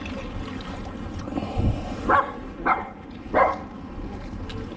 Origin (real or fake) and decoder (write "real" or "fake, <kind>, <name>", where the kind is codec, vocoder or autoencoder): real